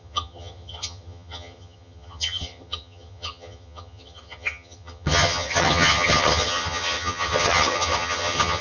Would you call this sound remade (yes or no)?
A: yes